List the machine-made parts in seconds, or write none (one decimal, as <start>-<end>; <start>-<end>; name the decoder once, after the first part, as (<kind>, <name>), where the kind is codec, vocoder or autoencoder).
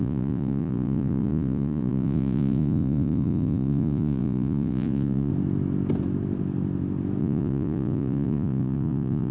0.0-5.3 (vocoder, Vocos); 7.2-9.3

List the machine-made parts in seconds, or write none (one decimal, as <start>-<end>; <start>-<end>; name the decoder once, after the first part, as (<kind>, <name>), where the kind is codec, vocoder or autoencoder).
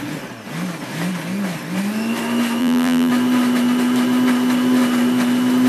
2.6-3.1 (vocoder, BigVGAN v2)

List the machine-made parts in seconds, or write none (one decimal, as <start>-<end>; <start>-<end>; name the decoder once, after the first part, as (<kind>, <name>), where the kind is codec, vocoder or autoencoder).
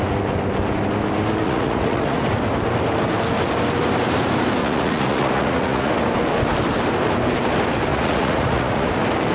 1.4-2.2 (vocoder, Vocos); 4.6-5.9; 7.9-8.9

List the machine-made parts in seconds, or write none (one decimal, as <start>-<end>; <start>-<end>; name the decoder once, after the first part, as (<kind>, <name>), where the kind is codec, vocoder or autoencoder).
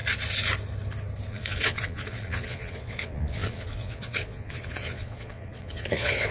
1.3-6.3 (vocoder, Vocos)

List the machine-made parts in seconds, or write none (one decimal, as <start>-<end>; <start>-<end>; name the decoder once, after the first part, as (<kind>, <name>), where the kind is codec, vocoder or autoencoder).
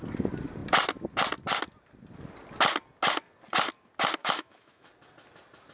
4.2-4.9 (autoencoder, DAC-VAE)